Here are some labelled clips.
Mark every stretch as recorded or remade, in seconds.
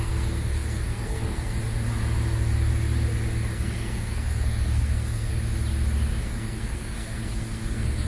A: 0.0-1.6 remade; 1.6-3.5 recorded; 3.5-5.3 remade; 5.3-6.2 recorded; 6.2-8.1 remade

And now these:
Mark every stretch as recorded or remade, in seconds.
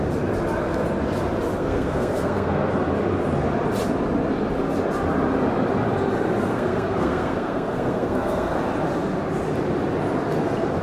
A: 0.0-1.5 recorded; 1.5-2.7 remade; 2.7-6.5 recorded; 6.5-8.6 remade; 8.6-10.8 recorded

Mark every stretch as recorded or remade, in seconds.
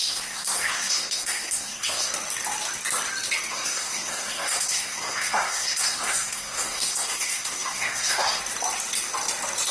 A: 0.0-2.1 remade; 2.1-3.5 recorded; 3.5-8.4 remade; 8.4-9.7 recorded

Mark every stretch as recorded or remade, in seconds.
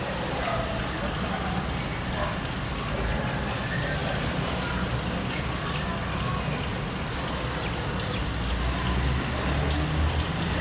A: 0.0-10.6 recorded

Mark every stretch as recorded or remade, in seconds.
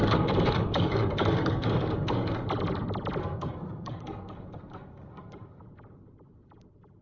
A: 0.0-2.5 remade; 2.5-3.2 recorded; 3.2-5.6 remade; 5.6-7.0 recorded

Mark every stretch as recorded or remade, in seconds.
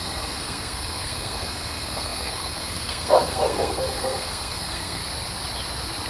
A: 0.0-5.0 remade; 5.0-6.1 recorded